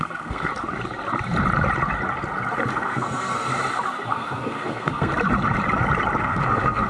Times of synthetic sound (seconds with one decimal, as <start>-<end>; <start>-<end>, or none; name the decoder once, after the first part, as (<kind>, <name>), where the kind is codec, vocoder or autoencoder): 0.0-0.5 (codec, SNAC); 2.7-3.5; 4.1-5.1; 6.2-6.9